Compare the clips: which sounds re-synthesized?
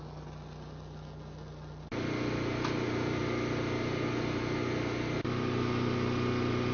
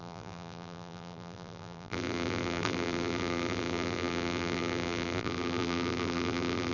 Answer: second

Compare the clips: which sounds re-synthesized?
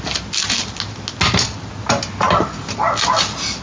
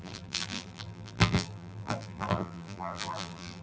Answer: second